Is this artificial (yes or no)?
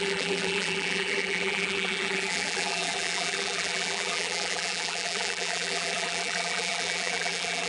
yes